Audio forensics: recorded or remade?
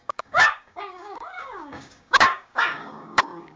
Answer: remade